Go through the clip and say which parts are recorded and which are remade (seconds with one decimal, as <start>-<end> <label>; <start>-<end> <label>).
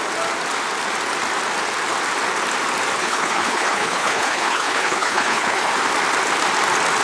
0.0-3.0 recorded; 3.0-5.7 remade; 5.7-7.0 recorded